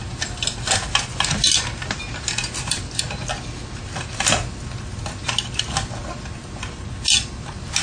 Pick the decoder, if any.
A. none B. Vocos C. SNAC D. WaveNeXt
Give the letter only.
A